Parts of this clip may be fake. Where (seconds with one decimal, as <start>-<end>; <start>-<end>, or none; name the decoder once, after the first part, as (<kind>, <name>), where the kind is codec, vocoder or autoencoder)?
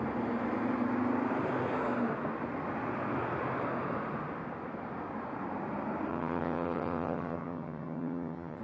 6.1-8.6 (vocoder, HiFi-GAN)